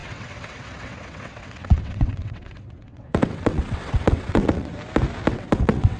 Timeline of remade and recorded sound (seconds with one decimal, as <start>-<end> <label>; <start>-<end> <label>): 0.0-4.7 remade; 4.7-5.3 recorded; 5.3-6.0 remade